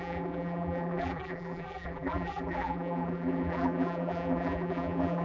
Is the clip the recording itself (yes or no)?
no